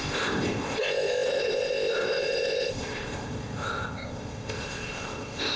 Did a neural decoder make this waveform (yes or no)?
yes